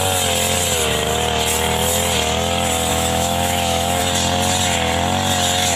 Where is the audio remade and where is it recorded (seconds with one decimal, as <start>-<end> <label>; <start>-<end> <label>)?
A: 0.0-2.9 recorded; 2.9-4.0 remade; 4.0-5.8 recorded